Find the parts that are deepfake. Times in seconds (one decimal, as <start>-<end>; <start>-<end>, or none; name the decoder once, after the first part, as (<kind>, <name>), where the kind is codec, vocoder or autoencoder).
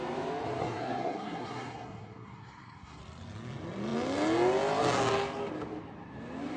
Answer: 0.6-3.0 (codec, SNAC)